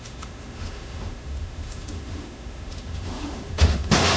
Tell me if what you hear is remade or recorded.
remade